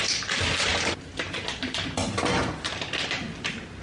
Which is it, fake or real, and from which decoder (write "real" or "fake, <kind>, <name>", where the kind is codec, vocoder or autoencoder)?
real